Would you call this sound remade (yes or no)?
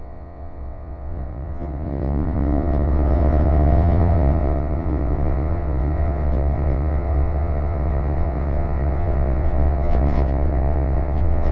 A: yes